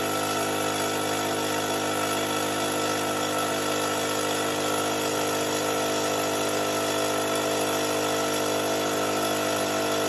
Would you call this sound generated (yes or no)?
no